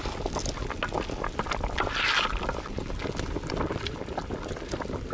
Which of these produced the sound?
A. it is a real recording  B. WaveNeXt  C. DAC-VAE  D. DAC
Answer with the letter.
A